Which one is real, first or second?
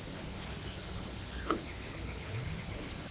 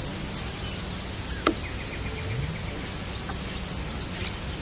second